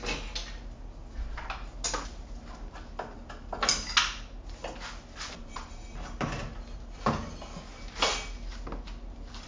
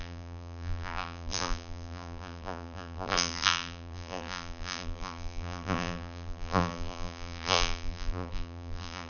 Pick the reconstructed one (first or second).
second